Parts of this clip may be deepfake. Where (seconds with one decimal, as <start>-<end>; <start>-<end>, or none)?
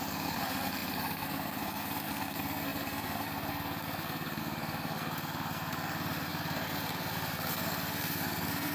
0.0-8.7